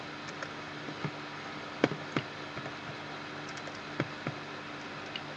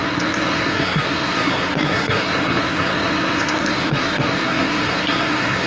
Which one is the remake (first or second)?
second